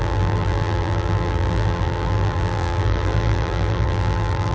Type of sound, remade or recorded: remade